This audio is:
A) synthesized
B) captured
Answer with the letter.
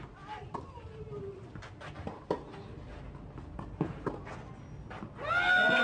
B